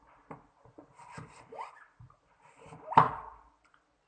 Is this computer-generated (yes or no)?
no